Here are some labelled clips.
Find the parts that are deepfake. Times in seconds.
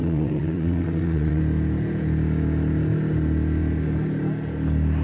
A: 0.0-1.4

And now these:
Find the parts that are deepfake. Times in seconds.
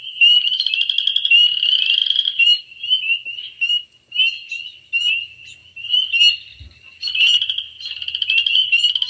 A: none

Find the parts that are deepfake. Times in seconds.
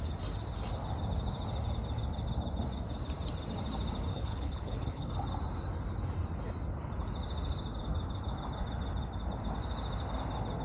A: 4.1-5.1